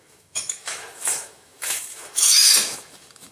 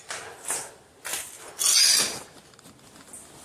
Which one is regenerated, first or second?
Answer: first